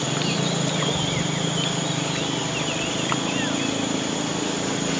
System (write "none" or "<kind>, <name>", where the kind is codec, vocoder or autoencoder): none